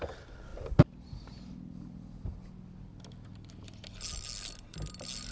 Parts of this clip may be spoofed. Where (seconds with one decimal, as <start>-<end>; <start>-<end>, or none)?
0.5-2.3